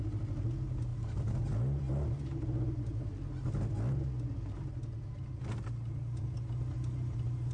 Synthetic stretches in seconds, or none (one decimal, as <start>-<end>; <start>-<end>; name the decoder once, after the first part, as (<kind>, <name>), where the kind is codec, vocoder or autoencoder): none